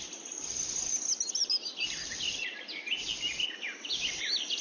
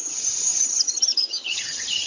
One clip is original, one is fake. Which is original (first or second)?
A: first